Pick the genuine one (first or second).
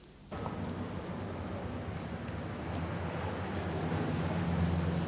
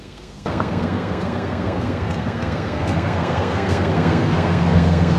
first